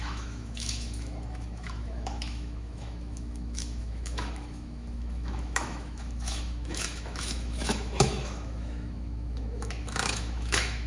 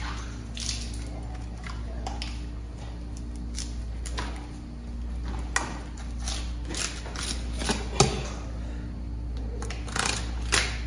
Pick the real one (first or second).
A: second